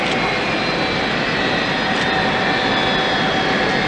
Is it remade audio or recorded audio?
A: recorded